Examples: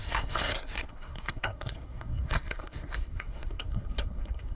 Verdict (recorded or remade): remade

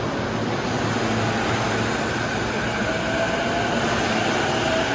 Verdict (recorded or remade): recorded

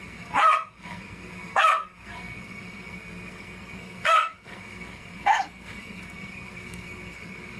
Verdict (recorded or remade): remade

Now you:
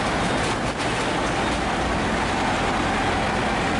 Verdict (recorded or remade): recorded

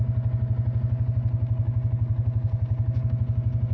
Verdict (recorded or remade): recorded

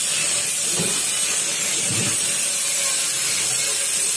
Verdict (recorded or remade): recorded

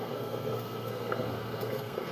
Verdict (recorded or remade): remade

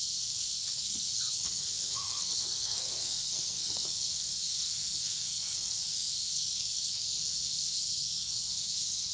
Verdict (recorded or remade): remade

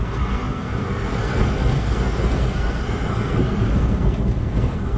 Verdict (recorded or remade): remade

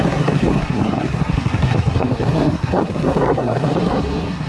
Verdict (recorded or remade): remade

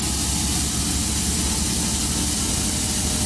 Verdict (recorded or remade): recorded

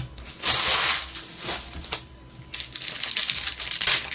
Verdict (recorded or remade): recorded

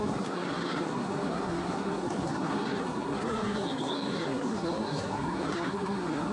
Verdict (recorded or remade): remade